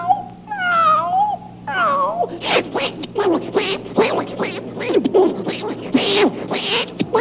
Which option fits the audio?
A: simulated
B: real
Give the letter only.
B